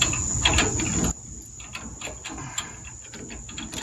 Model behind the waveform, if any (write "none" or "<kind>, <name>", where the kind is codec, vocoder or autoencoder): none